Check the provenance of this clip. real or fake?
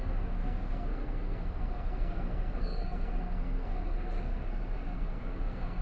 fake